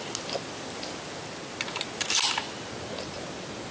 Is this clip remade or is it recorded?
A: recorded